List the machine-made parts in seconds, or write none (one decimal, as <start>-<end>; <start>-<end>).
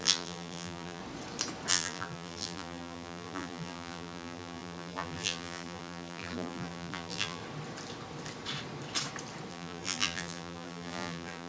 0.0-1.0; 1.7-7.4; 9.5-11.5